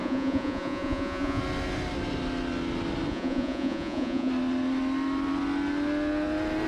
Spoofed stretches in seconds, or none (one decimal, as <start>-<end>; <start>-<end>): 0.0-1.4; 3.1-4.3